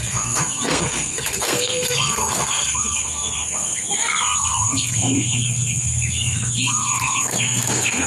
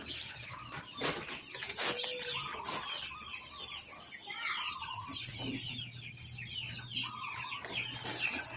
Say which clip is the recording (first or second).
second